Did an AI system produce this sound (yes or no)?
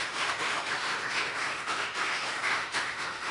yes